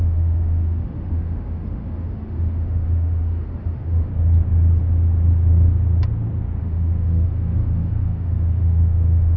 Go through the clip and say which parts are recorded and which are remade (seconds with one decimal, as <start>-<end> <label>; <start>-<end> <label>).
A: 0.0-4.1 remade; 4.1-6.6 recorded; 6.6-9.4 remade